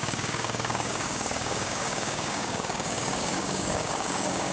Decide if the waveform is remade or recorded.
remade